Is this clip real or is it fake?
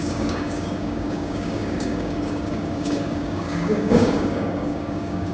fake